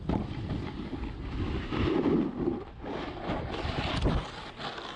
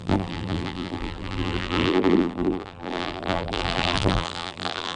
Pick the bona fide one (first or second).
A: first